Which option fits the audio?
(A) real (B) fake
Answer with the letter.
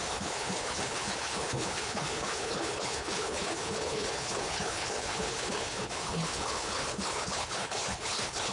B